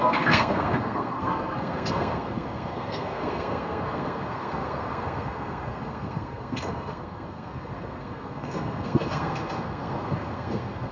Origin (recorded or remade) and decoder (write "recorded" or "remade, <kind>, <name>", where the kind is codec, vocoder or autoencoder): remade, codec, SNAC